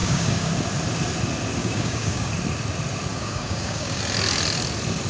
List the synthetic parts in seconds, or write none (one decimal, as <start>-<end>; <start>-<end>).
0.0-0.5; 1.6-2.3; 3.1-4.0